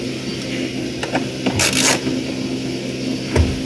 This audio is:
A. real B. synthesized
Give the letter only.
A